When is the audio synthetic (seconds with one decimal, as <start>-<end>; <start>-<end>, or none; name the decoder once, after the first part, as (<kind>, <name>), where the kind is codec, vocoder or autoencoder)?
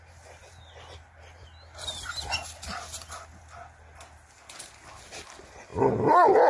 none